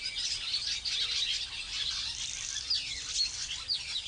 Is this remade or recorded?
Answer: recorded